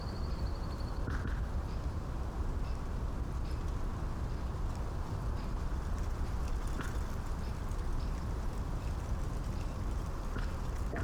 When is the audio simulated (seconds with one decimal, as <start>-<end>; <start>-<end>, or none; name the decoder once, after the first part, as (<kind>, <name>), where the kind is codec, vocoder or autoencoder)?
0.0-3.9 (vocoder, BigVGAN v2); 6.8-11.0